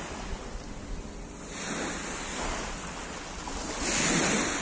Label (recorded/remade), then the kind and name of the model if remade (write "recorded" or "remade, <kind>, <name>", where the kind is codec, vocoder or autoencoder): recorded